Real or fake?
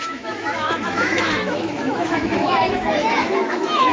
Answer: fake